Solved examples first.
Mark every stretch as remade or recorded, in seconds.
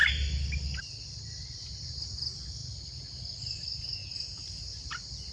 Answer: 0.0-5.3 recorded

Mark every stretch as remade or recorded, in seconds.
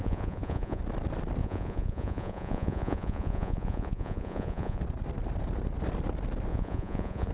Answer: 0.0-0.8 remade; 0.8-1.4 recorded; 1.4-4.8 remade; 4.8-6.5 recorded; 6.5-7.3 remade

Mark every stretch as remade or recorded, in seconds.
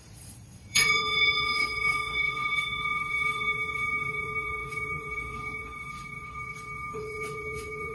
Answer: 0.0-7.9 remade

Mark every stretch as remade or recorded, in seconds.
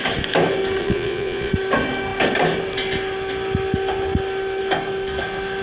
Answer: 0.0-0.8 recorded; 0.8-1.5 remade; 1.5-5.6 recorded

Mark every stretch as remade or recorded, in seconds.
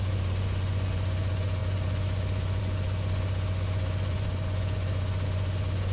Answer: 0.0-5.9 remade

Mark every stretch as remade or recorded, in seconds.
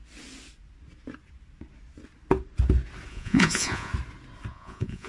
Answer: 0.0-3.1 recorded; 3.1-3.9 remade; 3.9-4.5 recorded; 4.5-5.1 remade